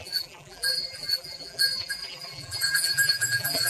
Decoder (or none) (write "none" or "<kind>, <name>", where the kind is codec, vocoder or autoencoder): vocoder, BigVGAN v2